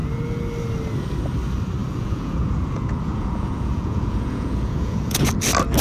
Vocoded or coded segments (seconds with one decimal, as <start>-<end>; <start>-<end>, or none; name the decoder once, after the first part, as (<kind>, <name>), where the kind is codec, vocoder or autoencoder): 1.8-5.3 (vocoder, Vocos)